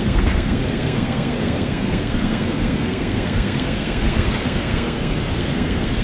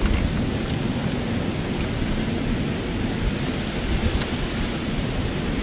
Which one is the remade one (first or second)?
first